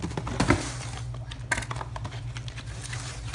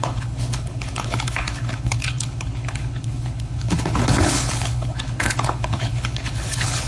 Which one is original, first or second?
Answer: first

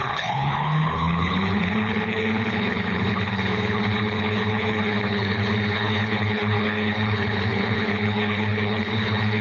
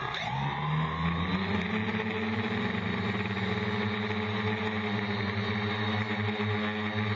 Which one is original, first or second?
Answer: second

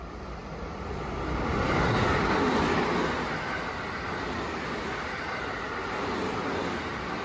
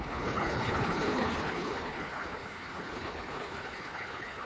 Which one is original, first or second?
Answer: first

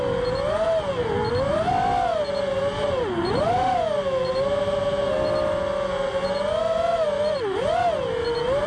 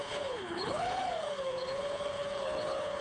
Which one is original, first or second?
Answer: first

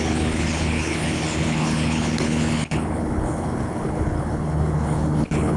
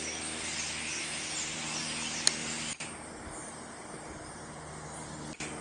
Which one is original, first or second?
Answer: second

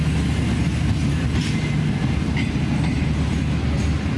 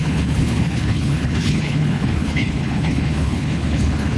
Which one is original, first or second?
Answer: first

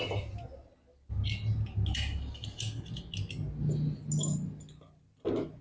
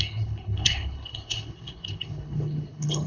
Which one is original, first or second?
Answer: first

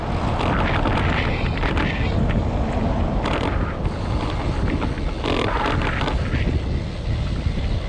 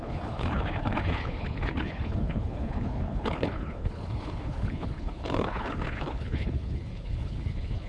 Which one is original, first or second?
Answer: first